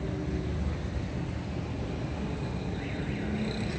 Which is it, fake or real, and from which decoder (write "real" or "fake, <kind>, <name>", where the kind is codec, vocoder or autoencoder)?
real